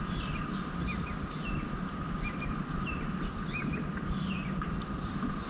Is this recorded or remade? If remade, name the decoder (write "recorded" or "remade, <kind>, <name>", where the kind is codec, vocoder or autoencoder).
recorded